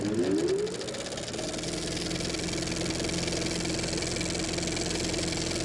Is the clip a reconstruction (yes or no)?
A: no